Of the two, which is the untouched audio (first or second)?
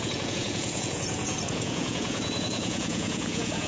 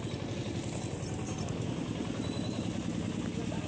second